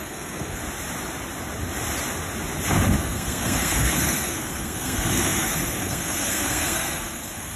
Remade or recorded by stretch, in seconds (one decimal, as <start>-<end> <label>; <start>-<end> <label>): 0.0-0.6 remade; 0.6-3.0 recorded; 3.0-7.6 remade